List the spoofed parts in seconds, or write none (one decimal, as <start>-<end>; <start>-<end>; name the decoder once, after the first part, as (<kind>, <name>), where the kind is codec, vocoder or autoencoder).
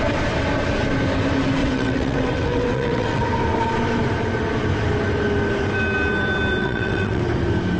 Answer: 1.6-3.2 (vocoder, WaveNeXt); 6.6-7.2